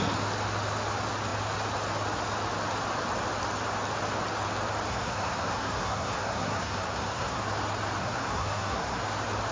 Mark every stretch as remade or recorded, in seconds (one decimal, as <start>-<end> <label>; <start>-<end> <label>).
0.0-4.9 recorded; 4.9-7.4 remade; 7.4-8.0 recorded; 8.0-9.0 remade; 9.0-9.5 recorded